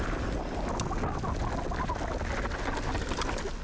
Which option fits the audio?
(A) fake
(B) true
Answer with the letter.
B